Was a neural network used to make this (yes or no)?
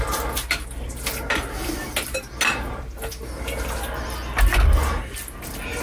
no